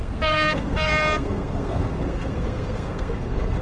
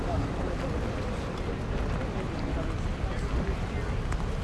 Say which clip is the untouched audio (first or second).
second